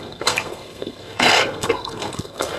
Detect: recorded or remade remade